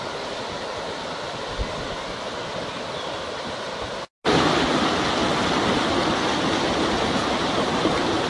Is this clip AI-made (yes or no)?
no